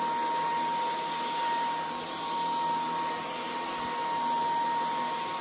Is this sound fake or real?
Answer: real